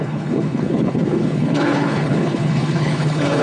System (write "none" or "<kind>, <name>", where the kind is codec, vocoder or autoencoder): codec, HILCodec